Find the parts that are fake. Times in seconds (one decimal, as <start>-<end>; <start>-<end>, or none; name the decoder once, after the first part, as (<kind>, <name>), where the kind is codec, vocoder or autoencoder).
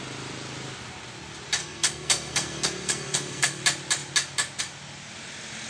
1.6-3.6 (codec, SNAC)